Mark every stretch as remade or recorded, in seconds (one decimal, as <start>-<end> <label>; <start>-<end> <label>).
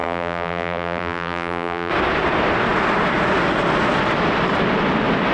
0.0-1.9 remade; 1.9-5.3 recorded